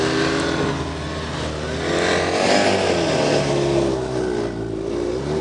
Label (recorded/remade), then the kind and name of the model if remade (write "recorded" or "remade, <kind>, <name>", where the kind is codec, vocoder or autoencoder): recorded